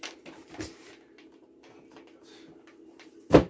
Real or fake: real